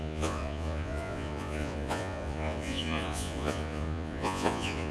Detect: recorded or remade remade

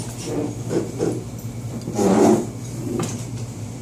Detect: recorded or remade recorded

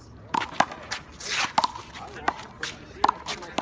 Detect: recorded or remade recorded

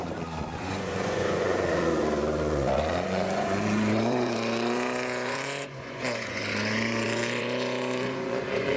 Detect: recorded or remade remade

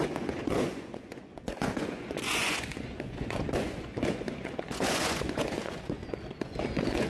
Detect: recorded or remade remade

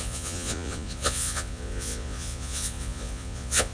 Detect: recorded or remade remade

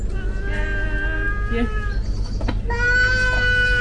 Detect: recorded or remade recorded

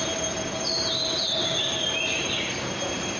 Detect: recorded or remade recorded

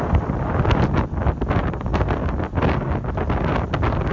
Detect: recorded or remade recorded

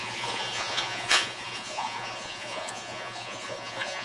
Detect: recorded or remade remade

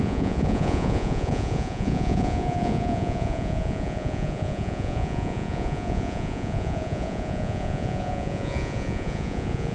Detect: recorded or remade remade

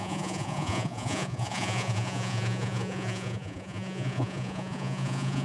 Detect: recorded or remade remade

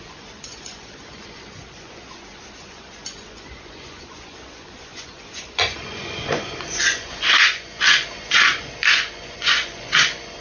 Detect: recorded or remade remade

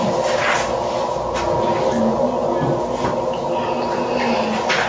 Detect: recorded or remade recorded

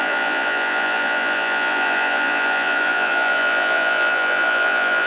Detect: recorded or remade remade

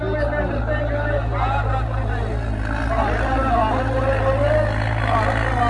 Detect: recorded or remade recorded